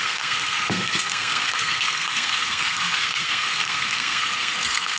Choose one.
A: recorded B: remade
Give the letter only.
B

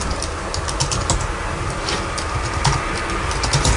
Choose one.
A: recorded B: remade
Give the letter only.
A